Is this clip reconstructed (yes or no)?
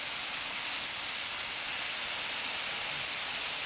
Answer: no